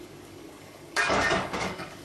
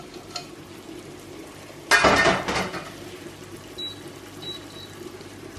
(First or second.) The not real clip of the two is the first